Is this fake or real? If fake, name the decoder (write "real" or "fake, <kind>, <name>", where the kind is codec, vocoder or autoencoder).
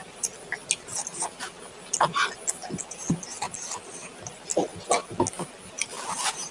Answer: real